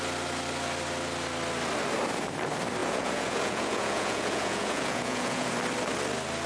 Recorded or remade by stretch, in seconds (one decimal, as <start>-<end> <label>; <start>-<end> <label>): 0.0-2.8 recorded; 2.8-5.5 remade; 5.5-6.5 recorded